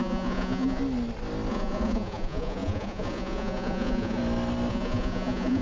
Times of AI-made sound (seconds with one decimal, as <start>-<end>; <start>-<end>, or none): 0.0-0.8; 1.5-4.2; 4.7-5.6